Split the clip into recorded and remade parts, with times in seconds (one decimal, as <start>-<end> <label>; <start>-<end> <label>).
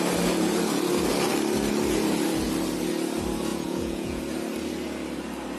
0.0-3.5 recorded; 3.5-4.2 remade; 4.2-5.6 recorded